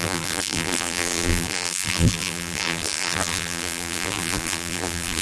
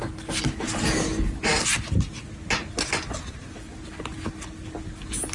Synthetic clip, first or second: first